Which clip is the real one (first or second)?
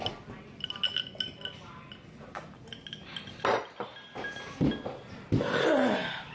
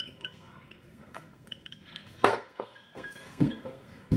first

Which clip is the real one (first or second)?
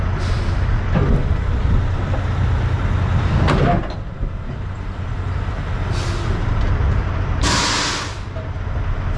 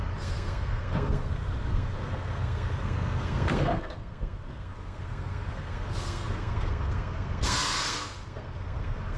first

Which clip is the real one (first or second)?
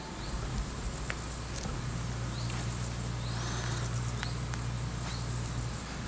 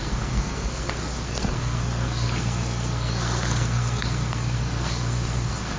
first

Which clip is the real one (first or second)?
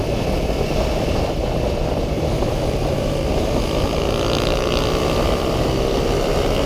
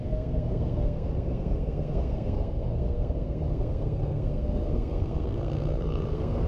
first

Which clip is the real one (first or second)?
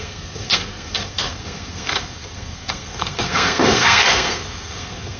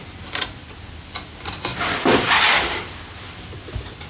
second